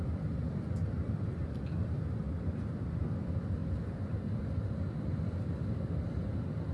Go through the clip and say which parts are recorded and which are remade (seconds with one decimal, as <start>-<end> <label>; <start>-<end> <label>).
0.0-6.7 remade